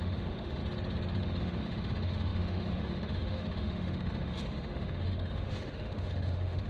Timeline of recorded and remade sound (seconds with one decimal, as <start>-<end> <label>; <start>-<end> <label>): 0.0-0.6 remade; 0.6-1.2 recorded; 1.2-6.7 remade